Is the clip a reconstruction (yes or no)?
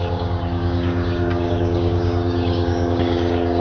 yes